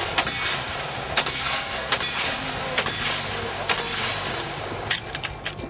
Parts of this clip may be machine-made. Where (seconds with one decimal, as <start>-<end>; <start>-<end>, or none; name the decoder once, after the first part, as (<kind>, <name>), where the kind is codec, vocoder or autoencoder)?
1.2-1.9 (codec, SNAC)